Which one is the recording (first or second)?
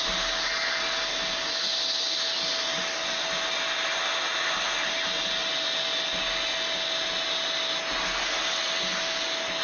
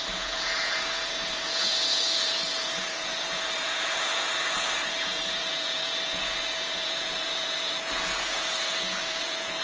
first